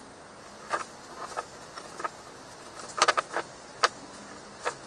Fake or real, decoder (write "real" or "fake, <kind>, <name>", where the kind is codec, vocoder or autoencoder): real